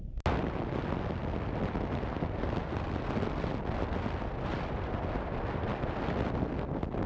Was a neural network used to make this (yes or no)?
no